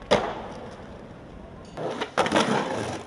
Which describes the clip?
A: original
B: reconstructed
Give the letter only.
A